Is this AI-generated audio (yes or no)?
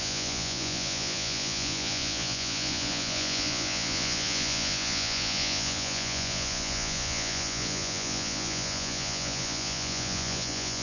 yes